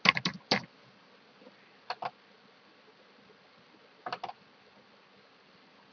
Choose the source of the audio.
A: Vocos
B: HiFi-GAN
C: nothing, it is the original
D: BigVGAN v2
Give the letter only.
C